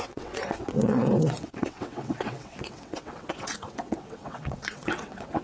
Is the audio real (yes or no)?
no